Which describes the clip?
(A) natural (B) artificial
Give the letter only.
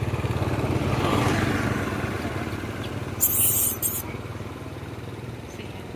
A